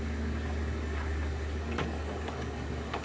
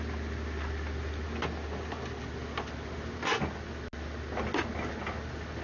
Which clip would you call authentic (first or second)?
second